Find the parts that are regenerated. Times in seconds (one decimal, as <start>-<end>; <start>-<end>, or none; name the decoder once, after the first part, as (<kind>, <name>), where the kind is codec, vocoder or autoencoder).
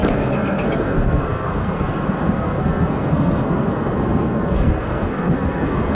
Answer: 0.0-5.9 (codec, SNAC)